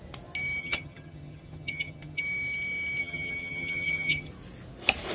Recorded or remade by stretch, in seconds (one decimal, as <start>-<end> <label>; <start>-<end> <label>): 0.0-0.6 recorded; 0.6-2.2 remade; 2.2-3.0 recorded; 3.0-4.3 remade; 4.3-5.1 recorded

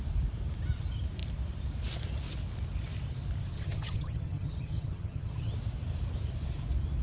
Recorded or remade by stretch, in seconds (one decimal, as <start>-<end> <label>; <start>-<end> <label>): 0.0-3.5 recorded; 3.5-5.5 remade; 5.5-7.0 recorded

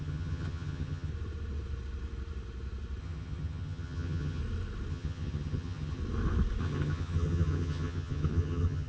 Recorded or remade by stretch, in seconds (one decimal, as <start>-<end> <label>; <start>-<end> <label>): 0.0-1.1 remade; 1.1-3.0 recorded; 3.0-4.4 remade; 4.4-4.9 recorded; 4.9-6.0 remade; 6.0-6.6 recorded; 6.6-8.9 remade